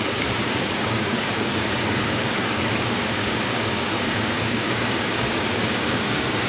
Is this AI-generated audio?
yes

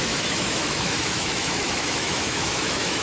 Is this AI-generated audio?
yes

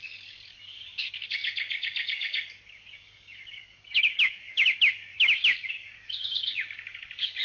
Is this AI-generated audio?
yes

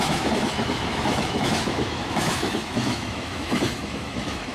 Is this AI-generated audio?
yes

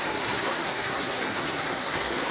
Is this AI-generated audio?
yes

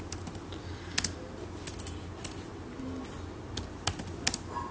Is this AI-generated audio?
no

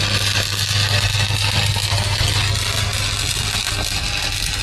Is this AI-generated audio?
no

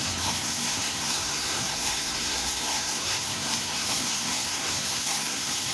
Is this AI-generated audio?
yes